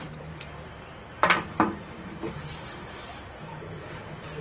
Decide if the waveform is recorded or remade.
remade